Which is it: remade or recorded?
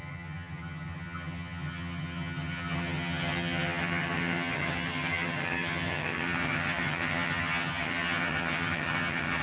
remade